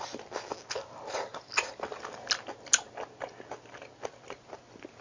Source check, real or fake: real